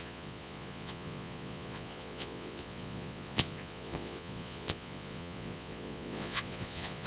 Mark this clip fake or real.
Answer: fake